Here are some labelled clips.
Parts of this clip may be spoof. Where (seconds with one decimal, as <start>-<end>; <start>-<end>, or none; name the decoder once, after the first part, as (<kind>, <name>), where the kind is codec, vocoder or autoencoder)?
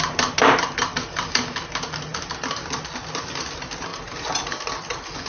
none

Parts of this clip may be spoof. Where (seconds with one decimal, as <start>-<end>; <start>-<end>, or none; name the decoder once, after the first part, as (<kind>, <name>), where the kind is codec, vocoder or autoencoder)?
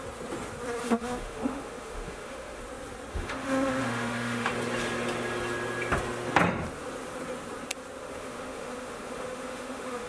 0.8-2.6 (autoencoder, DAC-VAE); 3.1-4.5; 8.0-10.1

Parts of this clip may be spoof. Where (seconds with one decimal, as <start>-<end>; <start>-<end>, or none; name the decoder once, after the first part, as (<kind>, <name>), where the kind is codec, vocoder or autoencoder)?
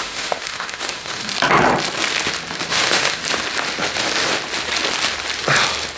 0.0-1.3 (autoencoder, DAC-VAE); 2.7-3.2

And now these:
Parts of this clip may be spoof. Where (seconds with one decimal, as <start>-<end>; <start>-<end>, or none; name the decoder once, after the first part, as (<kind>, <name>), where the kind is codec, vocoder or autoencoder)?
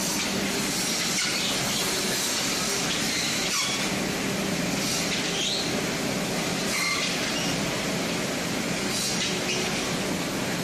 none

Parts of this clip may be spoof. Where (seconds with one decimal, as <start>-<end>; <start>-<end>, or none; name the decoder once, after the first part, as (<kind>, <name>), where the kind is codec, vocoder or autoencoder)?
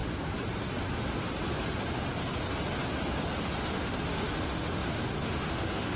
3.6-6.0 (autoencoder, DAC-VAE)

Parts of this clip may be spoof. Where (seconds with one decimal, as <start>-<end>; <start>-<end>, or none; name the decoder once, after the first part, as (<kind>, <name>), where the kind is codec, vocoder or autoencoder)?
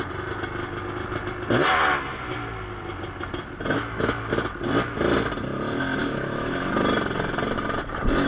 3.8-4.3 (autoencoder, DAC-VAE); 6.0-6.7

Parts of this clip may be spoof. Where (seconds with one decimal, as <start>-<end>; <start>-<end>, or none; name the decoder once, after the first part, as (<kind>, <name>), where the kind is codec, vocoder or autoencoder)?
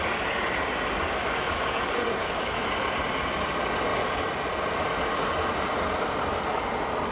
1.2-1.8 (autoencoder, DAC-VAE); 2.2-2.7